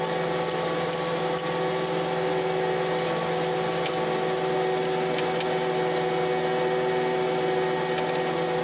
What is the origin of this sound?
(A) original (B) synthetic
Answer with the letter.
A